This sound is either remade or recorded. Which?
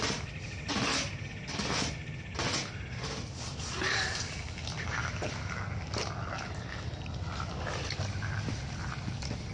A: recorded